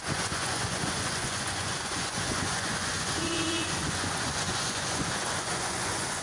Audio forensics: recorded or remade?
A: remade